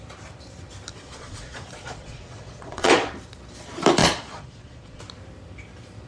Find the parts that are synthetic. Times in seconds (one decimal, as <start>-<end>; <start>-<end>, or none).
0.9-3.1; 4.0-5.0